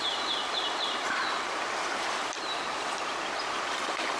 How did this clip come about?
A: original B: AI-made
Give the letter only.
B